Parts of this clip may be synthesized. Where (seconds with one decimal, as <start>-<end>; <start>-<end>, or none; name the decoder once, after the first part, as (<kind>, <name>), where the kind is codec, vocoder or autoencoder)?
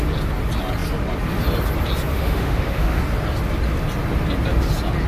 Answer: 2.1-3.0 (autoencoder, DAC-VAE)